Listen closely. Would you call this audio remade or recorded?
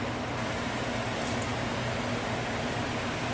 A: recorded